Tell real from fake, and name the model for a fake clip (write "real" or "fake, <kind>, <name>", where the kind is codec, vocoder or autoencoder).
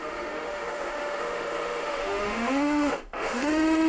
fake, autoencoder, DAC-VAE